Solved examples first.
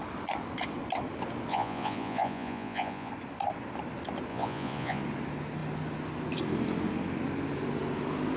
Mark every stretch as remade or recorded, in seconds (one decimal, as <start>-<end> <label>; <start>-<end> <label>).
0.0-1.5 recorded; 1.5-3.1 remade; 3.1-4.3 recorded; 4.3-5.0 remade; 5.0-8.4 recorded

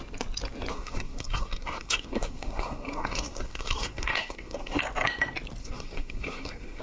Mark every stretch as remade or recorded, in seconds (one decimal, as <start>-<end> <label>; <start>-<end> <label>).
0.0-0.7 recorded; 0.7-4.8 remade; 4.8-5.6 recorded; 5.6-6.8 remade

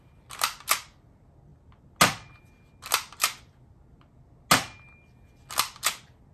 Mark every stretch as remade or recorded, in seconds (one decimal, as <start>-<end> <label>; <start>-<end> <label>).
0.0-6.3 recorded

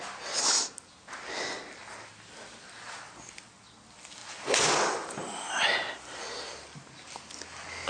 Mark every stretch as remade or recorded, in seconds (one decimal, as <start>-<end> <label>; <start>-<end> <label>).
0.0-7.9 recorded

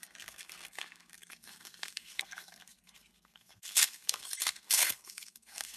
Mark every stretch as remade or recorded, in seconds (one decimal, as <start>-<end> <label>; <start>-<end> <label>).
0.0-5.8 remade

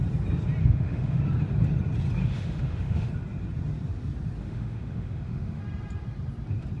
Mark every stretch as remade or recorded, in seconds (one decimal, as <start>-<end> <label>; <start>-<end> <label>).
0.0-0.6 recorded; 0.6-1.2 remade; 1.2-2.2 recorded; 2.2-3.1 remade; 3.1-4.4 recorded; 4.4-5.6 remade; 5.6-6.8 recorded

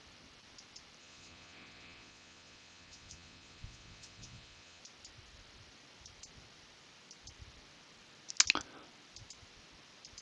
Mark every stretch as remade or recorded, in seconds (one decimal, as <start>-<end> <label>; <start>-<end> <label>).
0.0-1.0 recorded; 1.0-4.8 remade; 4.8-10.2 recorded

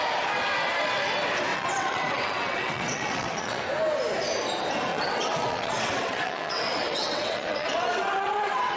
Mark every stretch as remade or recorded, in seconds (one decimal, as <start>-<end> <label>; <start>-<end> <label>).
0.0-1.5 recorded; 1.5-3.6 remade; 3.6-4.9 recorded; 4.9-8.8 remade